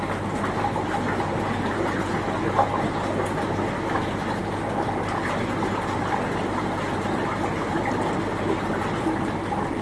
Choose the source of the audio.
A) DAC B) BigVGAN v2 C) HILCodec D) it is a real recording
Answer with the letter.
D